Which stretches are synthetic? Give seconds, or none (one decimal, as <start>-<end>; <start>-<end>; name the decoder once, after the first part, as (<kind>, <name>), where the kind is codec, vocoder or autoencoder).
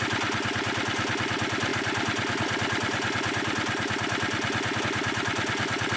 none